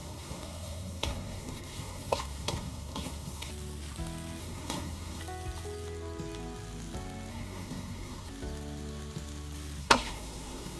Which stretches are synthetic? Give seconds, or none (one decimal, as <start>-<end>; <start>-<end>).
0.0-3.5; 4.4-5.2; 7.3-8.3; 9.8-10.8